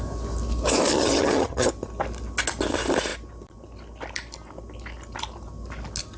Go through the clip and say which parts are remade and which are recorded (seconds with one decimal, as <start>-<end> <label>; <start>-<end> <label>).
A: 0.0-0.9 recorded; 0.9-1.7 remade; 1.7-6.2 recorded